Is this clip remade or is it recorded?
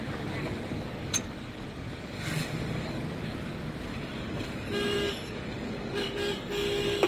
remade